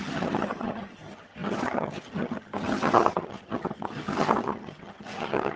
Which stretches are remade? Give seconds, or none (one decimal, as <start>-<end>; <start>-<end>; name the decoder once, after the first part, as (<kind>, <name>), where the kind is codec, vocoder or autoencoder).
0.0-5.6 (vocoder, HiFi-GAN)